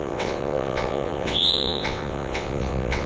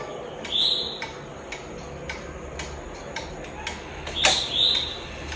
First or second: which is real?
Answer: second